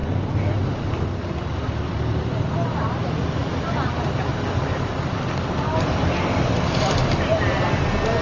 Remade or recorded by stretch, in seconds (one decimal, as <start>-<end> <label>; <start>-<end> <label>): 0.0-3.4 remade; 3.4-5.1 recorded; 5.1-7.0 remade; 7.0-8.2 recorded